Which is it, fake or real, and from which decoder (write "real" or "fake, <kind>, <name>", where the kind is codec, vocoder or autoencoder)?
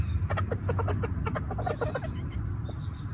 real